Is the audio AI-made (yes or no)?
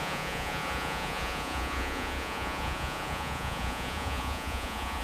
yes